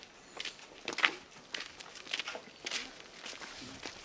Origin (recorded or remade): recorded